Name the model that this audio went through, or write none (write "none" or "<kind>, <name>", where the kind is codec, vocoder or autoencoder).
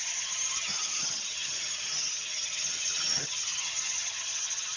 vocoder, HiFi-GAN